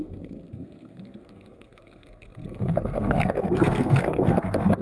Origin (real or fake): fake